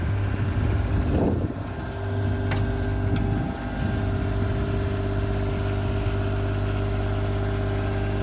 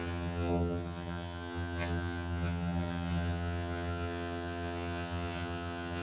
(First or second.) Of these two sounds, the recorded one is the first